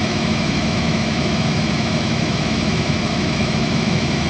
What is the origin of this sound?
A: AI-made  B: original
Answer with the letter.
A